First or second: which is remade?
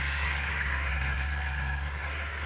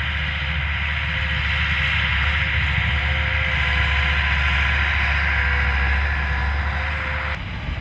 first